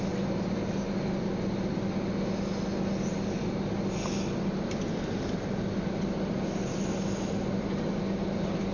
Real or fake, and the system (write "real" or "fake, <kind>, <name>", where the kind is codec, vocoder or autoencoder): real